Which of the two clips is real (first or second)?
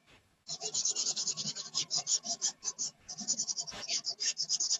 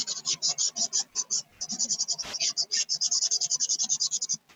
second